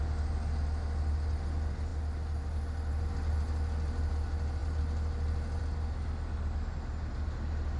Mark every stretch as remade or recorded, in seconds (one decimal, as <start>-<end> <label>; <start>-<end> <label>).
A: 0.0-7.8 recorded